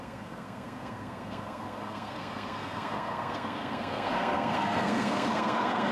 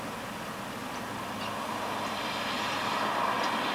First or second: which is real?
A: second